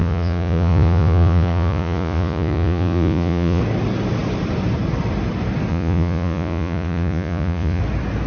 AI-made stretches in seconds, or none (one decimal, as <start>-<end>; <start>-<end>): 0.0-3.6; 5.7-7.8